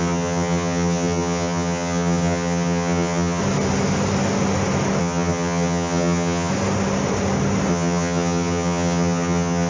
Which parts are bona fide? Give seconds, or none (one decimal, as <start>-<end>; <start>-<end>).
3.4-5.0; 6.5-7.7